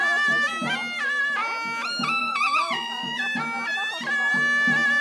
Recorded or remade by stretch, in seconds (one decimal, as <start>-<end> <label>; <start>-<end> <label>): 0.0-2.2 recorded; 2.2-3.2 remade; 3.2-5.0 recorded